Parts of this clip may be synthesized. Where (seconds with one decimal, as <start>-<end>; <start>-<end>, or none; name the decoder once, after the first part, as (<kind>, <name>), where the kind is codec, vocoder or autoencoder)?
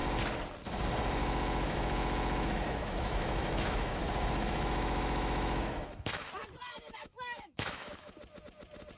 1.2-6.3 (autoencoder, DAC-VAE); 6.9-8.1